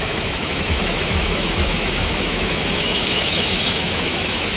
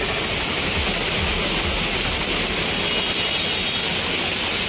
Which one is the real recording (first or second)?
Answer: second